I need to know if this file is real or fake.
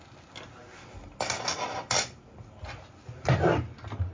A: real